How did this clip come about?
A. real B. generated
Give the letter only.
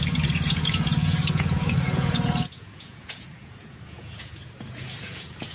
B